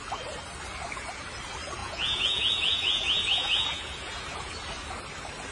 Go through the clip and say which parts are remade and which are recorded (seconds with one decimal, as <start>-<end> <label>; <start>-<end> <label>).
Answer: 0.0-1.8 recorded; 1.8-4.5 remade; 4.5-5.5 recorded